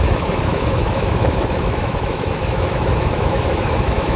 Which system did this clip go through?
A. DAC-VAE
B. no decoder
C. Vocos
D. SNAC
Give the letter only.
A